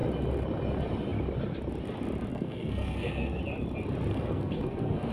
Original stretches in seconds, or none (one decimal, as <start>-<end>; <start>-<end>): 0.0-2.3; 3.4-4.1